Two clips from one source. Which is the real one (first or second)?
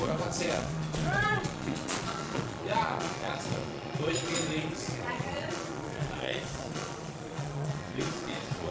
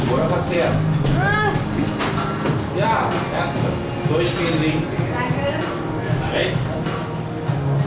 second